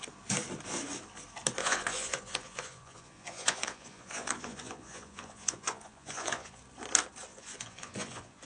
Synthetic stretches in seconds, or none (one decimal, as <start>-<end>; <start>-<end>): 1.6-6.6; 7.3-8.4